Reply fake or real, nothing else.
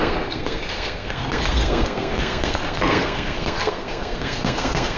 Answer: fake